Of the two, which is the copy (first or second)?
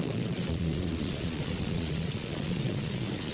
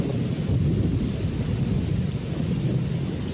first